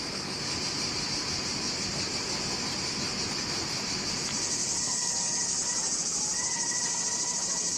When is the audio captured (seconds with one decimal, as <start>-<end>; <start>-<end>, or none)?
0.0-4.8; 5.4-7.8